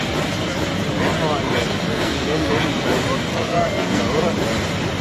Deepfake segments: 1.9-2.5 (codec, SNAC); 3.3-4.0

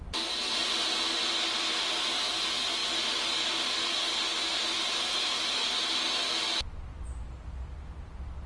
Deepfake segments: none

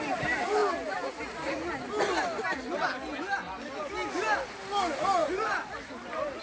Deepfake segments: 5.2-6.4 (vocoder, BigVGAN v2)

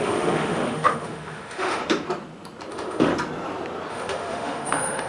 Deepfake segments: 0.0-1.8 (autoencoder, DAC-VAE); 2.7-3.1; 3.9-5.1

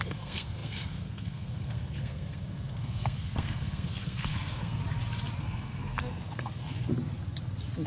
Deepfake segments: 0.0-4.8 (codec, SNAC); 5.4-6.9

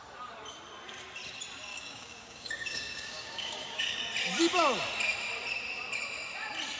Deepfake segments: 1.7-4.0 (codec, DAC)

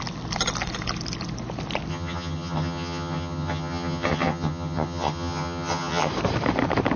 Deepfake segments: 1.9-6.1 (vocoder, HiFi-GAN)

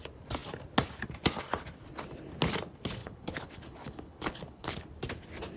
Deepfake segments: 3.0-4.9 (codec, HILCodec)